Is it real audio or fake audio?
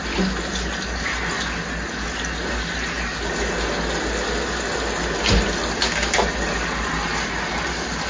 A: real